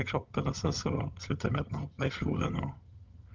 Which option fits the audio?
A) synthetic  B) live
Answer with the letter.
A